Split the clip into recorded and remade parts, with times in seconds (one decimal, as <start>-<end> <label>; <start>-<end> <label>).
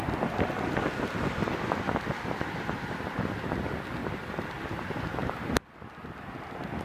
0.0-1.4 recorded; 1.4-2.8 remade; 2.8-4.0 recorded; 4.0-4.7 remade; 4.7-6.8 recorded